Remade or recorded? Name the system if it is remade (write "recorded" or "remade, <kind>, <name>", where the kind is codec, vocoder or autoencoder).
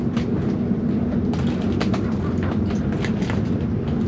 recorded